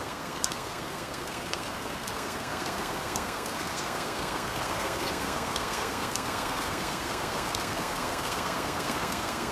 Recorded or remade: remade